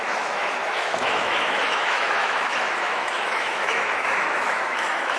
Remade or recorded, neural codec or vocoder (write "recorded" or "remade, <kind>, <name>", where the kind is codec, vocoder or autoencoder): remade, autoencoder, DAC-VAE